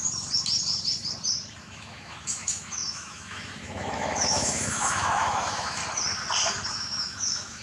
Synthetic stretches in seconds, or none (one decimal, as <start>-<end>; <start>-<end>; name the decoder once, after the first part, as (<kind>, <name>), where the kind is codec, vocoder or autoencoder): 1.6-5.8 (autoencoder, DAC-VAE); 6.7-7.6